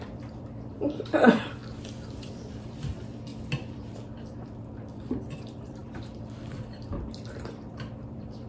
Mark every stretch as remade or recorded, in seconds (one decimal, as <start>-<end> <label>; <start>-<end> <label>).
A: 0.0-8.5 remade